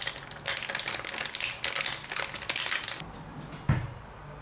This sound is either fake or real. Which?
real